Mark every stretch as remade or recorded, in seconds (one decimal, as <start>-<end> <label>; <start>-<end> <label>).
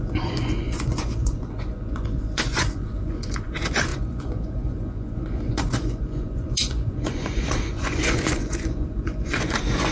0.0-9.9 remade